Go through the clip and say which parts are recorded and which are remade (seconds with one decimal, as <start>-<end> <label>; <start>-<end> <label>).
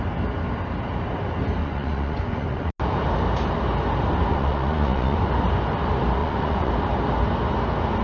0.0-1.6 recorded; 1.6-2.7 remade; 2.7-4.3 recorded; 4.3-5.3 remade; 5.3-6.2 recorded; 6.2-6.7 remade; 6.7-8.0 recorded